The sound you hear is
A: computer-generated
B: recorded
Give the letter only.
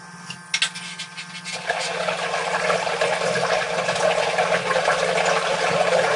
B